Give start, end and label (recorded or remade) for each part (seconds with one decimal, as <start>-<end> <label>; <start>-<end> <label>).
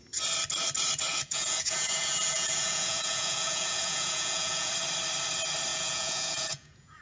0.0-1.1 recorded; 1.1-4.7 remade; 4.7-5.7 recorded; 5.7-7.0 remade